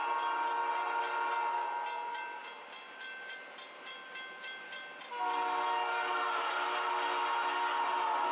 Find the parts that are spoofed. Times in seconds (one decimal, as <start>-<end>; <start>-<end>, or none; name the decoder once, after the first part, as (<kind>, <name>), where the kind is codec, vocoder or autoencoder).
none